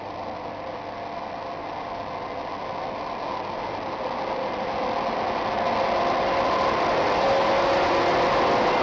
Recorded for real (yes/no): yes